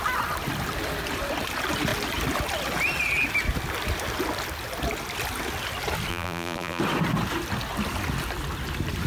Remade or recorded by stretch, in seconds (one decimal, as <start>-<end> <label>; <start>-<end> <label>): 0.0-6.1 recorded; 6.1-6.8 remade; 6.8-9.1 recorded

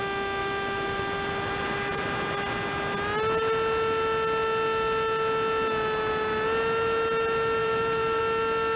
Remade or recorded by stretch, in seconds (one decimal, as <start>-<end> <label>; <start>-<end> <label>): 0.0-0.4 recorded; 0.4-2.0 remade; 2.0-7.6 recorded; 7.6-8.2 remade; 8.2-8.8 recorded

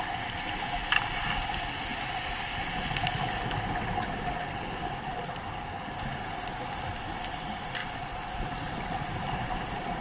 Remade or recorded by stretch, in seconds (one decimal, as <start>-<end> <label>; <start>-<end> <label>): 0.0-10.0 recorded

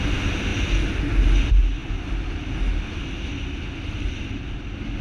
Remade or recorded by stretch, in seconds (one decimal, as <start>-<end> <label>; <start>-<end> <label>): 0.0-5.0 recorded